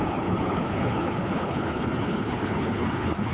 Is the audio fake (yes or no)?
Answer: yes